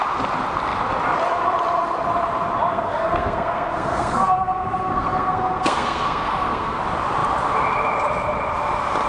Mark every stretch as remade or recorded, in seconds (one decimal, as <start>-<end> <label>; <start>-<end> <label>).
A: 0.0-2.7 recorded; 2.7-6.8 remade; 6.8-9.1 recorded